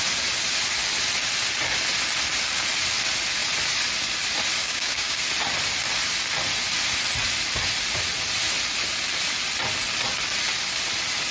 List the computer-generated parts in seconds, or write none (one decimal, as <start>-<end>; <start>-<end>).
4.6-5.2

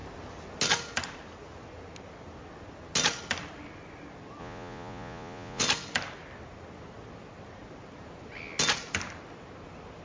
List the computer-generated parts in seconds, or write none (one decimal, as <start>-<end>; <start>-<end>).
4.4-5.6

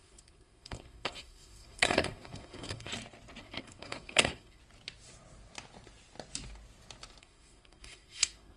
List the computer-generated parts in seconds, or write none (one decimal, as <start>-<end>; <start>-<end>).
0.0-2.9; 3.4-4.6; 7.2-8.6

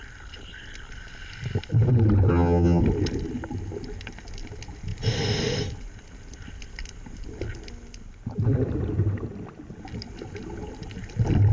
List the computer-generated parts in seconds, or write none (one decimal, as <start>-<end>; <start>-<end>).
2.3-2.8

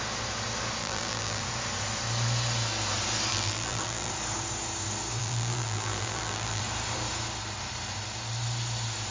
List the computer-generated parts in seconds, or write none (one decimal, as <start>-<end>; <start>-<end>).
0.8-1.4; 3.3-4.1; 5.2-6.6

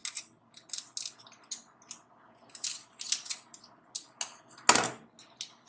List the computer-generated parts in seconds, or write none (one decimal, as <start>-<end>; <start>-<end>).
none

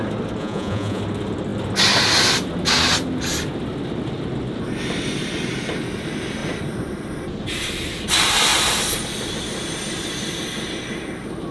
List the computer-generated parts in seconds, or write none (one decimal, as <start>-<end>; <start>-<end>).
0.4-1.0